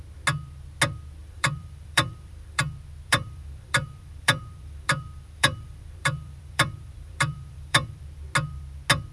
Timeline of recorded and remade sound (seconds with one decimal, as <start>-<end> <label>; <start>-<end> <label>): 0.0-1.2 recorded; 1.2-2.6 remade; 2.6-3.1 recorded; 3.1-8.0 remade; 8.0-9.1 recorded

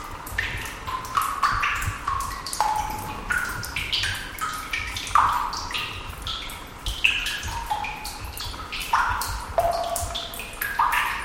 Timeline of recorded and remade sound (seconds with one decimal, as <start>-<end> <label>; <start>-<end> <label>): 0.0-8.8 recorded; 8.8-9.7 remade; 9.7-11.2 recorded